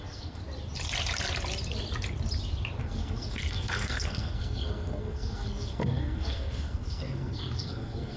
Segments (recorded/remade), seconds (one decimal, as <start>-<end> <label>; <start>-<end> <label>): 0.0-0.4 remade; 0.4-2.8 recorded; 2.8-8.2 remade